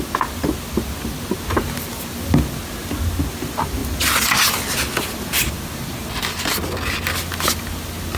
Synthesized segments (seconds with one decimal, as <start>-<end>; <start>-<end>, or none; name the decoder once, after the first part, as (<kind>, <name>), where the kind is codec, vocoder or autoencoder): none